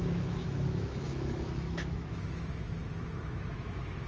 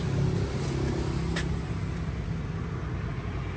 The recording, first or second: second